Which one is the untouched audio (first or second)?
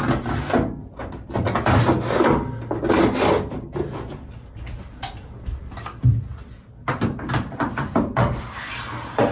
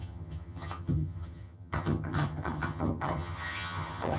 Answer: first